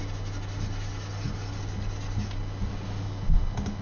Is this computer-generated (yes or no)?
no